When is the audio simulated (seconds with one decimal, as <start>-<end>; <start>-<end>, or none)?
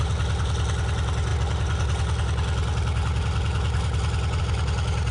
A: none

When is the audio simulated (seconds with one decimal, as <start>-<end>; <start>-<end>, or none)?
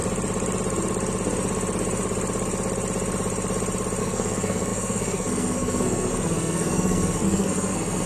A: 4.0-8.1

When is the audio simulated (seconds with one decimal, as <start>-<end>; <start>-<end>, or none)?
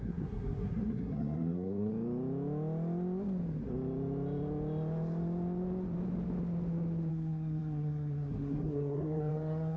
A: 0.0-1.9; 7.1-9.8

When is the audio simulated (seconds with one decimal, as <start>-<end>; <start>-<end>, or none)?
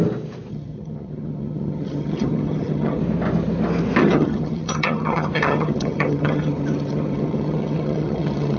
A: 0.5-3.0; 4.0-8.6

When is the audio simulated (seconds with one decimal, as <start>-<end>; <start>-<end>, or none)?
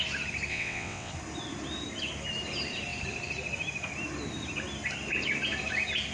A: 0.5-1.1